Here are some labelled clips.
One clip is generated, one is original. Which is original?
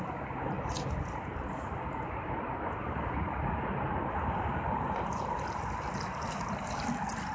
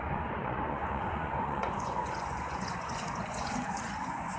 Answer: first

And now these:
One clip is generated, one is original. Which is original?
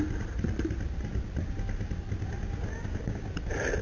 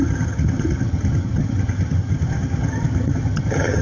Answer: first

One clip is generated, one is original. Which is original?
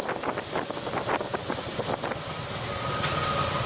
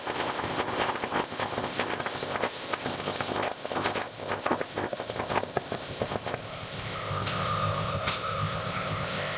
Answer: first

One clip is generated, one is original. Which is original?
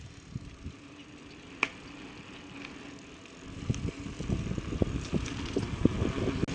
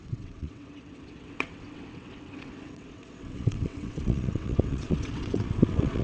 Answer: first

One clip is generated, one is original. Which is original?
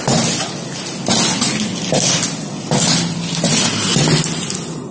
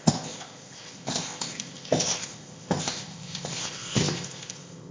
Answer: first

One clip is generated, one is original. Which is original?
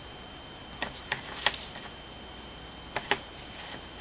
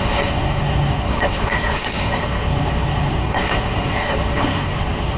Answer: first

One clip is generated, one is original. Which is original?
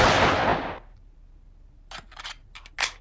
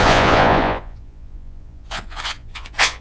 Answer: first